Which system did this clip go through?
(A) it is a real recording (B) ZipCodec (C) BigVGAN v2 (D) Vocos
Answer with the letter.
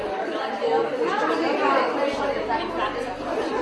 A